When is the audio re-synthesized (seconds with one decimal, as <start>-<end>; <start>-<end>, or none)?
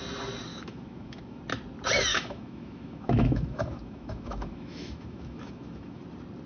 0.5-1.4; 2.1-6.0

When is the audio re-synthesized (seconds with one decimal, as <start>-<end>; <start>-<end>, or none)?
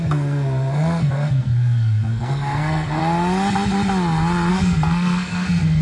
0.0-3.0; 4.5-5.8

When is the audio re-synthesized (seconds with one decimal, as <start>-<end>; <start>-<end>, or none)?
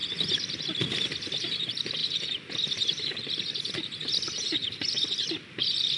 none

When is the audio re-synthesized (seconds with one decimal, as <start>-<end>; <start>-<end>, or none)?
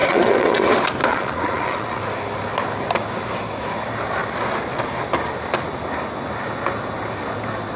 0.0-0.7; 1.1-2.0